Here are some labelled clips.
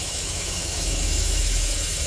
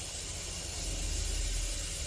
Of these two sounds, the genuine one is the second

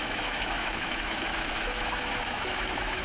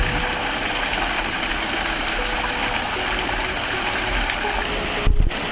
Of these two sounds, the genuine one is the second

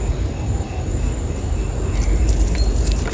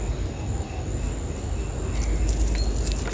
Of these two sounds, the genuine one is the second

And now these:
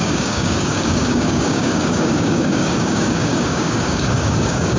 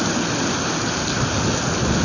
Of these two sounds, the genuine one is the second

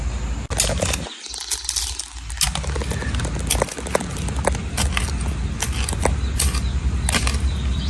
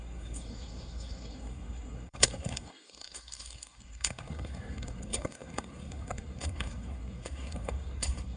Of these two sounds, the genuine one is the first